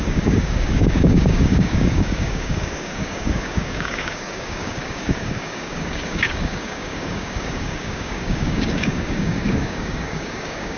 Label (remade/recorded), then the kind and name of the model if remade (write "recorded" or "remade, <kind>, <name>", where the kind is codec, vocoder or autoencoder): remade, codec, DAC